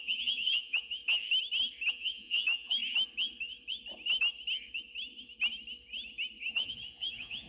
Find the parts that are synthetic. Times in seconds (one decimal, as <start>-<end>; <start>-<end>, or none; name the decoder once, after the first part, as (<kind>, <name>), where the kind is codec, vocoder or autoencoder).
0.0-1.0 (vocoder, Vocos); 1.9-2.8; 6.5-7.5

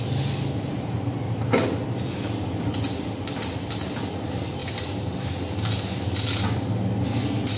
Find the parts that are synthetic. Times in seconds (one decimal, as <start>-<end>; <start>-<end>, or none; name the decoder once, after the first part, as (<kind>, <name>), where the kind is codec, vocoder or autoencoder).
none

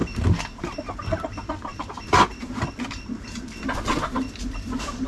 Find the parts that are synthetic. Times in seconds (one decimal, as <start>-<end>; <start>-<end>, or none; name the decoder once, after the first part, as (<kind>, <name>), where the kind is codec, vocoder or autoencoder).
none